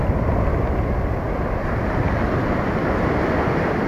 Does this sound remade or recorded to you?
recorded